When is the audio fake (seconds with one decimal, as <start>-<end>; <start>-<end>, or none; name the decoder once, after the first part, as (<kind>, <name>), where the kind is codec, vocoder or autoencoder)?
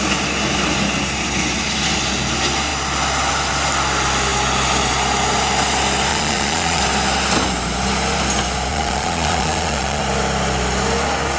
6.1-6.8 (vocoder, Vocos); 8.7-10.0